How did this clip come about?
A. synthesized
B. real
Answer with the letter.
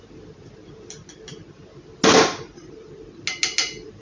B